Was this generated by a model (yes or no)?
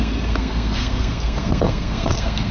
yes